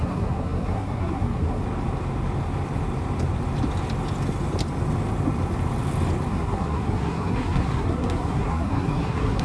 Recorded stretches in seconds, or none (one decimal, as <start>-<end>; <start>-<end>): 1.6-6.3